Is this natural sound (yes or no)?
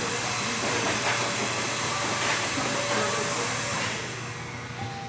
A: yes